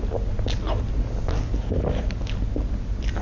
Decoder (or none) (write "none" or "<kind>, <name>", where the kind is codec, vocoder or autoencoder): none